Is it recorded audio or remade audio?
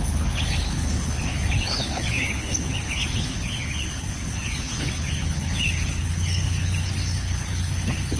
remade